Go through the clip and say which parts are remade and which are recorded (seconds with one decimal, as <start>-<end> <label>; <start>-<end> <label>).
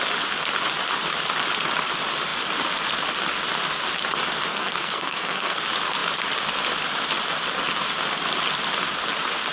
0.0-4.5 recorded; 4.5-5.6 remade; 5.6-9.5 recorded